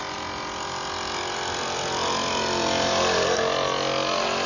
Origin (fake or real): real